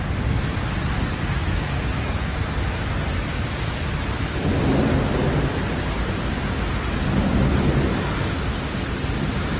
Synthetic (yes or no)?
no